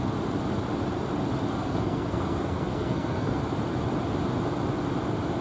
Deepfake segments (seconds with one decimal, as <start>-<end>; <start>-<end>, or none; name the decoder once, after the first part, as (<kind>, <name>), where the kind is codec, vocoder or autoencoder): 1.5-3.4 (codec, SNAC)